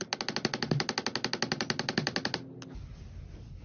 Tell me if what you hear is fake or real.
real